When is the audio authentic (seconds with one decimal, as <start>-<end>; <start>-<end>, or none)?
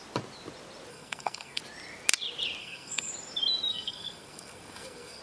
0.0-0.9; 1.6-2.6; 3.1-3.7